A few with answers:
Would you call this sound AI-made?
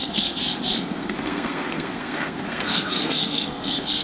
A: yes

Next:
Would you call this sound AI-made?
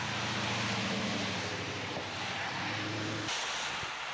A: no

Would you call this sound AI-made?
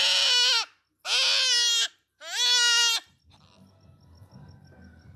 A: no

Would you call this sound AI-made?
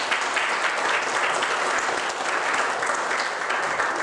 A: no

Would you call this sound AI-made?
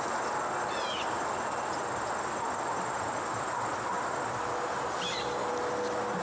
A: no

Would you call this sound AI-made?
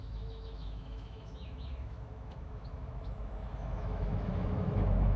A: yes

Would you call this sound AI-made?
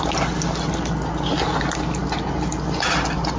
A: no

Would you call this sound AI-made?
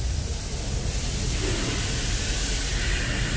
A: no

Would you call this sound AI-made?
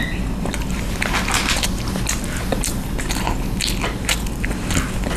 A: no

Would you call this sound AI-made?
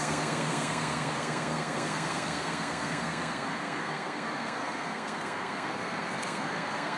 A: yes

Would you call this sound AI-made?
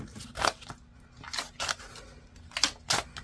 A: no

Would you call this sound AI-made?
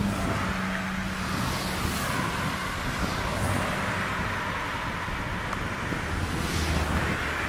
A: no